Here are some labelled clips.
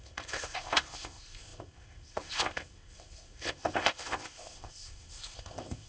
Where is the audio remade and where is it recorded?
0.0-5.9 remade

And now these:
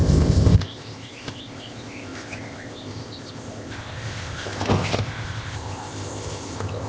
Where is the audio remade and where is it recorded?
0.0-6.9 remade

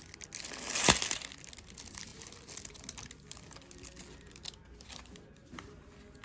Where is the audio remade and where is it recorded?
0.0-6.2 recorded

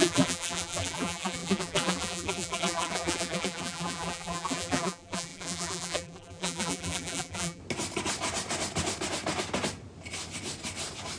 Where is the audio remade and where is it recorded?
0.0-7.6 remade; 7.6-11.2 recorded